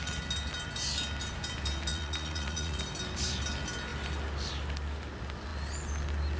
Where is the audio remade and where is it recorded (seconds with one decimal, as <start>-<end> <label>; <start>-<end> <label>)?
0.0-1.9 recorded; 1.9-2.8 remade; 2.8-6.4 recorded